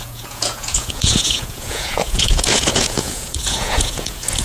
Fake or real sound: fake